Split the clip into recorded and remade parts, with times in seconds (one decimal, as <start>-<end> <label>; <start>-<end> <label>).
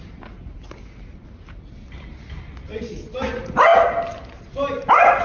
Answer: 0.0-5.2 recorded